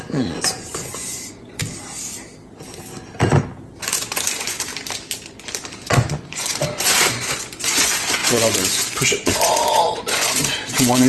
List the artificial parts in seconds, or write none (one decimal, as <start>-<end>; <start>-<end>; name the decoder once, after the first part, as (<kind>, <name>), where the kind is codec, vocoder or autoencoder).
0.0-1.6 (vocoder, Vocos); 3.8-4.7; 5.7-11.1